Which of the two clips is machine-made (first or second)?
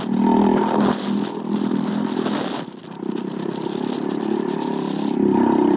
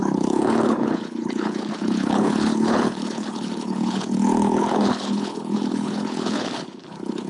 second